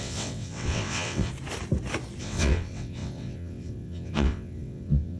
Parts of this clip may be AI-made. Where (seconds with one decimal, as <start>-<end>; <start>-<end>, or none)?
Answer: 0.0-1.3; 2.2-5.2